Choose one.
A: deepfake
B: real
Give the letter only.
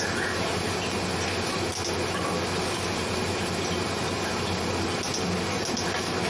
B